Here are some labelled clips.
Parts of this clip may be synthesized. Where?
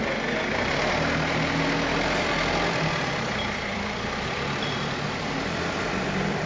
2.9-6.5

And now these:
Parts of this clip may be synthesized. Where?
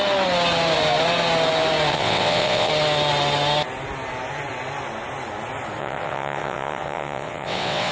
1.9-2.7; 5.8-7.9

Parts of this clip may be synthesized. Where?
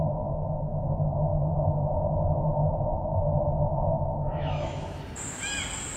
1.3-2.0; 3.7-5.0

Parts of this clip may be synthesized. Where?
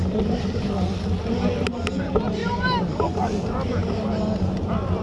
none